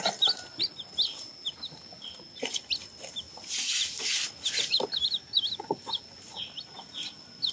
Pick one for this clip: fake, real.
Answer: real